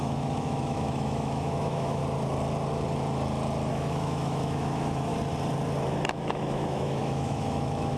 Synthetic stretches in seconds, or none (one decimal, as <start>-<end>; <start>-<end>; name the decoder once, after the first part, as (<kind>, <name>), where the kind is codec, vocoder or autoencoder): 0.0-2.0 (autoencoder, DAC-VAE); 3.7-5.1; 6.1-8.0